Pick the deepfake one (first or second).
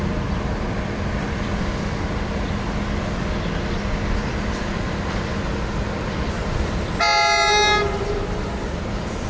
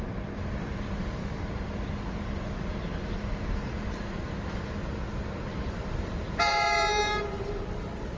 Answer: second